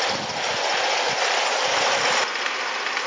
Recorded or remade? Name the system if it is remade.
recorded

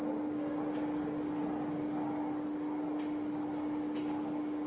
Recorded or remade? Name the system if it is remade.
recorded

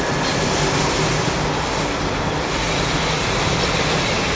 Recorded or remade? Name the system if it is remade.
recorded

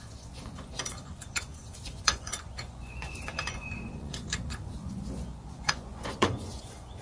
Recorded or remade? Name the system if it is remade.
remade, vocoder, Vocos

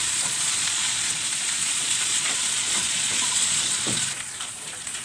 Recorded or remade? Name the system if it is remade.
remade, vocoder, Vocos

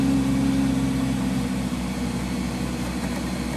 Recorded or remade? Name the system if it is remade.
recorded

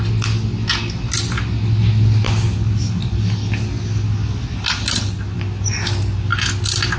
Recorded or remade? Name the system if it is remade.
recorded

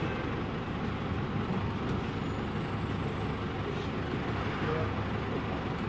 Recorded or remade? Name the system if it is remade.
recorded